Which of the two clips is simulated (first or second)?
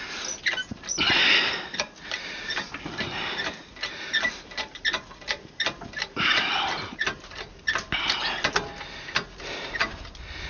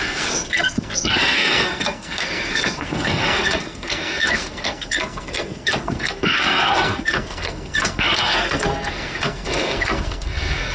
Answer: second